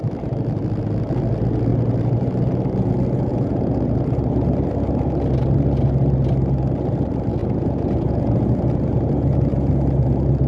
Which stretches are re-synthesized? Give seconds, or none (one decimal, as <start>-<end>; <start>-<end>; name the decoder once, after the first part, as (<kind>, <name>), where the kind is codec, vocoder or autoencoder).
3.3-4.0 (vocoder, Vocos); 7.4-9.7